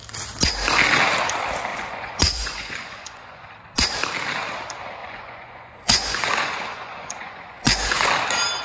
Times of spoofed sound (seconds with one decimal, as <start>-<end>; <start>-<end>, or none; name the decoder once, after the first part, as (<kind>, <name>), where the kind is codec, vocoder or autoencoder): 1.7-3.5 (vocoder, Vocos); 5.0-8.1

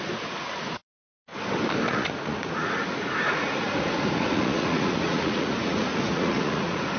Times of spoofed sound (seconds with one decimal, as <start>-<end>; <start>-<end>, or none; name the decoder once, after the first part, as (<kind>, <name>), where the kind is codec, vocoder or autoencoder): 0.0-1.3 (vocoder, Vocos); 1.9-7.0